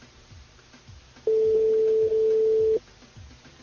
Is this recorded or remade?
recorded